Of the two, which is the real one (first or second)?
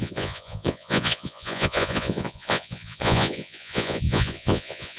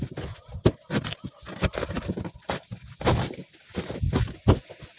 second